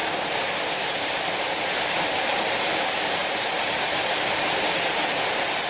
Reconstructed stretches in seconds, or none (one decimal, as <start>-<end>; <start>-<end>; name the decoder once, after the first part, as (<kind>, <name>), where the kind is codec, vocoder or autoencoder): 0.6-5.7 (vocoder, BigVGAN v2)